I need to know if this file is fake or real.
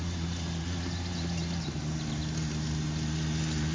real